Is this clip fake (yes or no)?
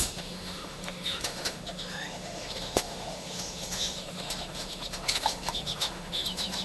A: yes